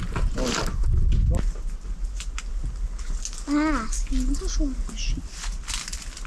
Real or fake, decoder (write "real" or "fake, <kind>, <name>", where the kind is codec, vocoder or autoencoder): real